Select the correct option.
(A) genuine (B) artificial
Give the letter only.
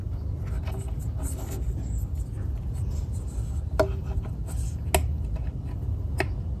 A